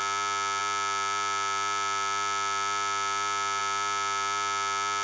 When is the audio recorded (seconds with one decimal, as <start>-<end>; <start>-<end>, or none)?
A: 0.0-5.0